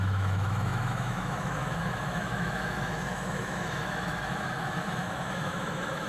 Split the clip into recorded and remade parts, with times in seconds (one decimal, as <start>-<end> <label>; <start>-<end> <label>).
0.0-6.1 remade